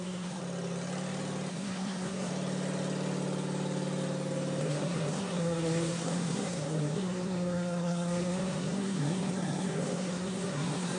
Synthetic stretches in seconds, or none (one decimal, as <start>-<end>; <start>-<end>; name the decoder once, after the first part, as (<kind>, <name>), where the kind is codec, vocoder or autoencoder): 0.0-0.4 (codec, SNAC); 1.5-2.3; 4.6-11.0